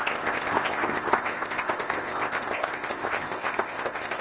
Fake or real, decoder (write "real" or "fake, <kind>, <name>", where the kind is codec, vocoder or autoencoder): fake, codec, ZipCodec